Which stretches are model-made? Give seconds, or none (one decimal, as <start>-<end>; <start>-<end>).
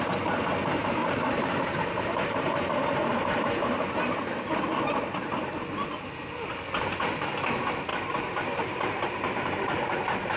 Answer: 1.0-2.7; 7.9-10.0